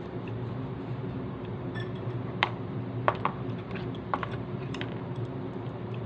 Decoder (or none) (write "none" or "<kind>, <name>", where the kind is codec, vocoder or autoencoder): vocoder, BigVGAN v2